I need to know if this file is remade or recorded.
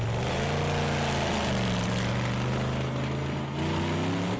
recorded